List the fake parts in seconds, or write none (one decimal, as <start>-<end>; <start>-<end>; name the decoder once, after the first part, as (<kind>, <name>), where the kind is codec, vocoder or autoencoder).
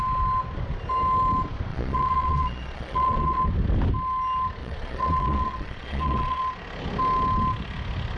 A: 1.7-3.4 (vocoder, Vocos); 4.6-6.4